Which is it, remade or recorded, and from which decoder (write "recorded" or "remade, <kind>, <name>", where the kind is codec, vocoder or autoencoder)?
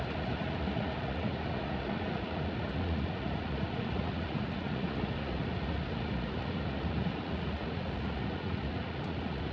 remade, vocoder, Vocos